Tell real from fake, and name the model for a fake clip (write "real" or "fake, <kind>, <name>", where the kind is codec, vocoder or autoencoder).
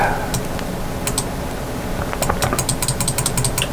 real